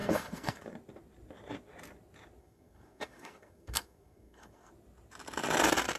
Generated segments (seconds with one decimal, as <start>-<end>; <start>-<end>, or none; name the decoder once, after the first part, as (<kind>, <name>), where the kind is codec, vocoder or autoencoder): 0.0-0.6 (codec, SNAC); 2.4-4.7